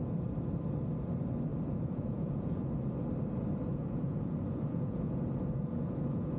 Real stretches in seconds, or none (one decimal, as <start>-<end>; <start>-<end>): 0.0-1.5; 2.7-3.7